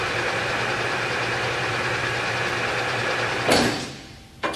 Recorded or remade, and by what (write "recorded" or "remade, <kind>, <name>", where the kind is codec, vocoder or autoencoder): recorded